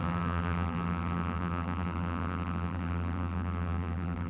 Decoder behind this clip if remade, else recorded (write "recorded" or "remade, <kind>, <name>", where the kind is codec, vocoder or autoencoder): remade, vocoder, BigVGAN v2